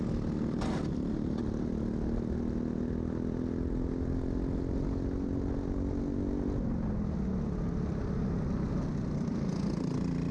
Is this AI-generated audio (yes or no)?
no